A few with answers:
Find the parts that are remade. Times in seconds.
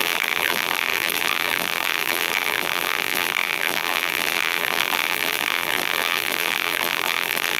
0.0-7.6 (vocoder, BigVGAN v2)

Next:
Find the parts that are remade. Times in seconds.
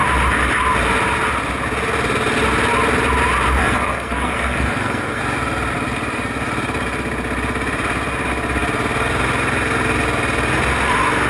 3.6-5.2 (codec, SNAC)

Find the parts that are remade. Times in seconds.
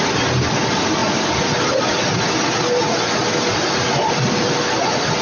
none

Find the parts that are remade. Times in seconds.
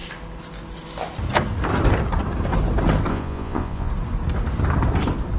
3.1-3.9 (vocoder, Vocos)